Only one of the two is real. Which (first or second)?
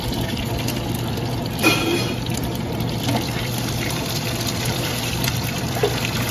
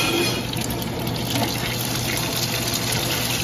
second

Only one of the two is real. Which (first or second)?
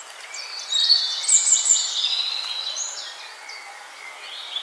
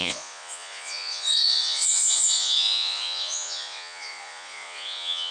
first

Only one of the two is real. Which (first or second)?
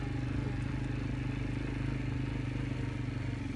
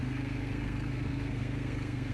first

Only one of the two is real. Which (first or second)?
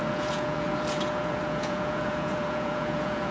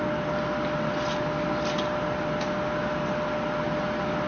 second